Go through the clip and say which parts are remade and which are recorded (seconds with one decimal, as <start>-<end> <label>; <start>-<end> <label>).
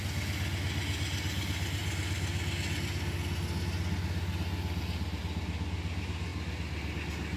0.0-7.4 recorded